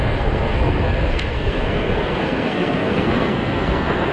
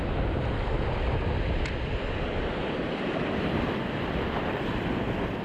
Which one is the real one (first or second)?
second